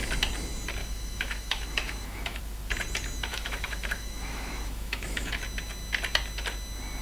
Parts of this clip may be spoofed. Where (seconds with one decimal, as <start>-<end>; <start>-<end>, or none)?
0.8-2.4; 3.3-5.4